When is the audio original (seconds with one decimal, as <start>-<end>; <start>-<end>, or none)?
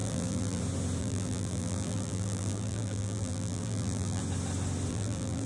0.6-1.0; 4.2-4.9